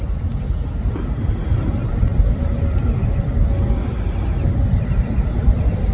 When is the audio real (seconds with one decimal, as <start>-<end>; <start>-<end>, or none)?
0.0-5.9